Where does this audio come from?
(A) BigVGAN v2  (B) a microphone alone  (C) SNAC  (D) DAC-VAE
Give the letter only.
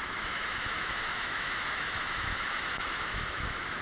D